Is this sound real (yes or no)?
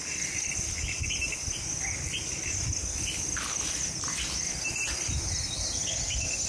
yes